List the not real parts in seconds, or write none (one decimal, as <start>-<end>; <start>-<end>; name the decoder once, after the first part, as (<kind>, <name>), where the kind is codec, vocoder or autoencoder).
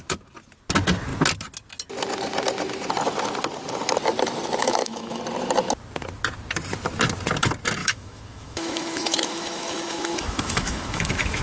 4.6-5.2 (autoencoder, DAC-VAE); 7.8-11.4